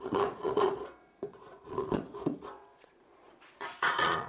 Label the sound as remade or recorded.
remade